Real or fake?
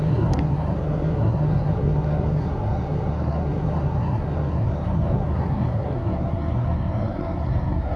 fake